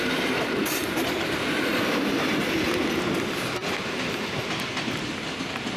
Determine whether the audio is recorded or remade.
recorded